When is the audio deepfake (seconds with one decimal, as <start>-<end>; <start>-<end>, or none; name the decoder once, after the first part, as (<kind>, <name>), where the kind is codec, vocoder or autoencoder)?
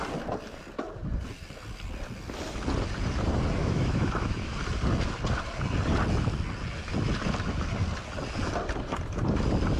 3.6-4.5 (autoencoder, DAC-VAE)